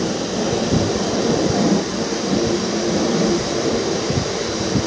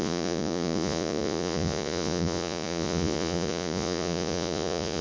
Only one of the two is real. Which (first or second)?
first